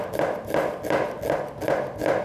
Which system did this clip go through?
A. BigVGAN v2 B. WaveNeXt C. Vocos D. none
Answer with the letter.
D